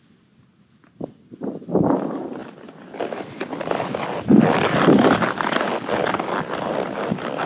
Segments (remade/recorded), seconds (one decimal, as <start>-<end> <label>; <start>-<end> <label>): 0.0-7.5 recorded